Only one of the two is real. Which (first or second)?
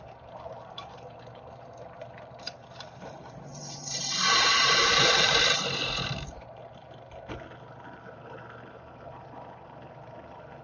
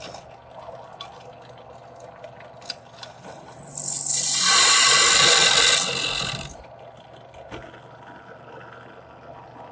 second